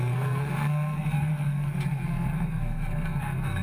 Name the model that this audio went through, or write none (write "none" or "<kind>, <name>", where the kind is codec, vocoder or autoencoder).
codec, SNAC